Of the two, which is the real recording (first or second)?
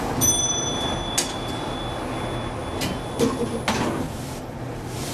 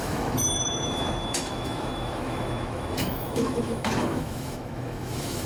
first